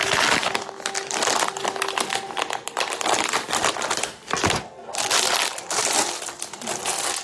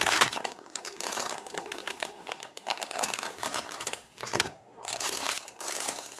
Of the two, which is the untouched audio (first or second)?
first